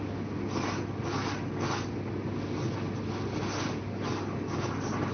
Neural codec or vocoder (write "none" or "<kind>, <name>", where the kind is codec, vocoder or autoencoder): none